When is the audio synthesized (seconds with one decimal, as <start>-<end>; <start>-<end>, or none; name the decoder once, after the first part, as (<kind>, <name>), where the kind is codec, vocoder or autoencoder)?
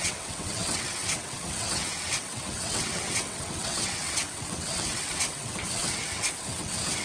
0.0-7.0 (vocoder, WaveNeXt)